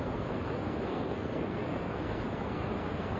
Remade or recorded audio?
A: remade